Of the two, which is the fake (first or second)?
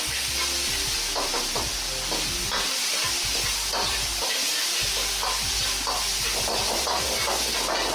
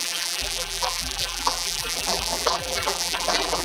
second